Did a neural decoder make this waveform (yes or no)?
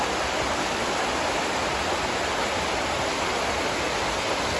no